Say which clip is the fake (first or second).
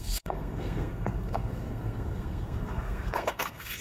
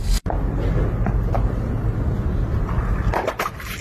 first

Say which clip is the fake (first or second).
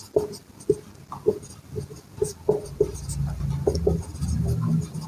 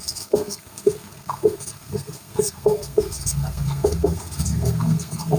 second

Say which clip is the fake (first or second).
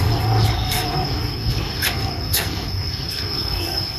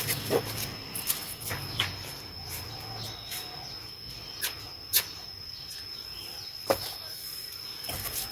first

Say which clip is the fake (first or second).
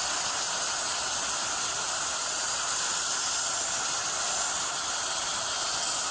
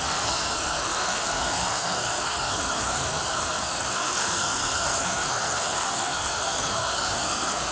second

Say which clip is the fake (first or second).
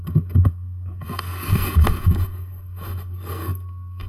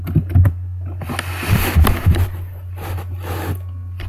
first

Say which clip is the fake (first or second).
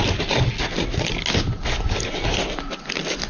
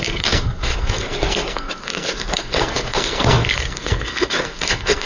second